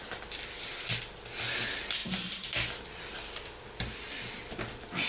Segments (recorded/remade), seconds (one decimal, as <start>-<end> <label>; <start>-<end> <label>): 0.0-5.1 recorded